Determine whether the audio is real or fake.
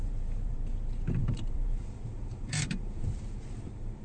fake